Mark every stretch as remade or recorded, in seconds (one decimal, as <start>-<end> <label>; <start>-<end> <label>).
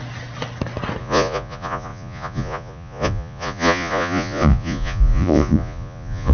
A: 0.0-1.0 recorded; 1.0-6.3 remade